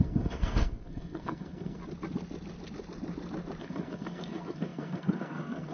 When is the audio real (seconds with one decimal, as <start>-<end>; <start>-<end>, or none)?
1.8-3.6